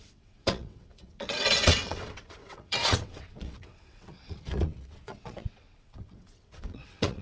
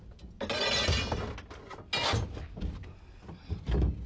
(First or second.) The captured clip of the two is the second